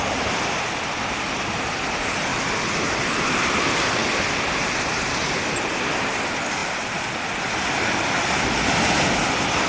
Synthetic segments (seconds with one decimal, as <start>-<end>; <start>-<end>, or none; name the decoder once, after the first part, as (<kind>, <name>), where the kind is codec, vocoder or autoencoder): none